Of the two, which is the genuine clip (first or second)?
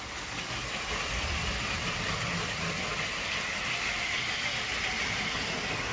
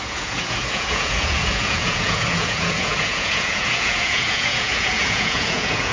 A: first